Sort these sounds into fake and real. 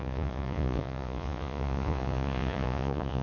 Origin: fake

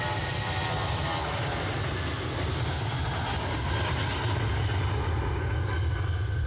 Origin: real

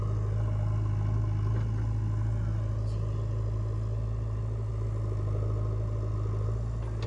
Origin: real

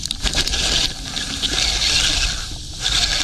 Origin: real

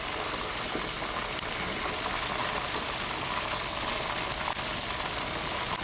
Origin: real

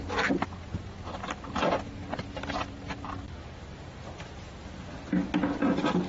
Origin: real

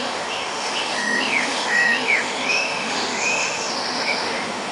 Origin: fake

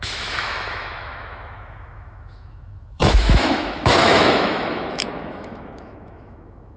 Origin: fake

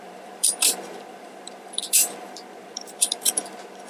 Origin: fake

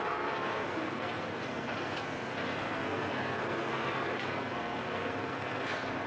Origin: fake